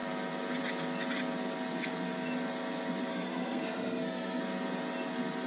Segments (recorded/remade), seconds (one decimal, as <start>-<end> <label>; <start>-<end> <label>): 0.0-3.1 recorded; 3.1-4.4 remade; 4.4-5.5 recorded